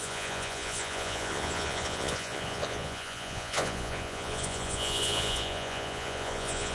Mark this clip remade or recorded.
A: remade